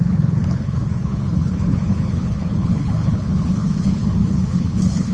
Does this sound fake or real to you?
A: fake